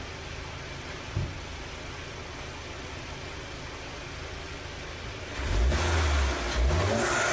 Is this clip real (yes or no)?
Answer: yes